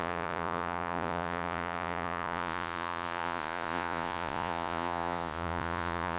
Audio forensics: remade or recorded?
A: remade